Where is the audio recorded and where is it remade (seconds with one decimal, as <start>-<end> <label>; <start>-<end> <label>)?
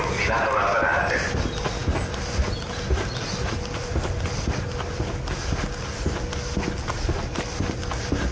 0.0-8.3 recorded